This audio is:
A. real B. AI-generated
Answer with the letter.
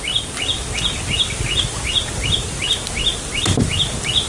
A